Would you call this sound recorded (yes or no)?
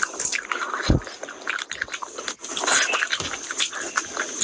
yes